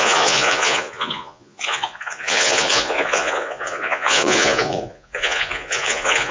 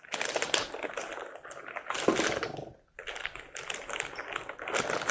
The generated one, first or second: first